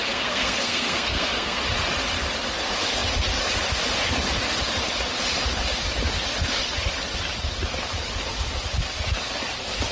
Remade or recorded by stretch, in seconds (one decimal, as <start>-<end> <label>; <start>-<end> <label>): 0.0-1.6 remade; 1.6-9.9 recorded